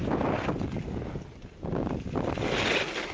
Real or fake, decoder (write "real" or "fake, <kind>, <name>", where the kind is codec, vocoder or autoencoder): real